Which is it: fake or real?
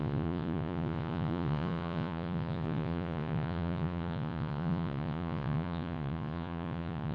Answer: fake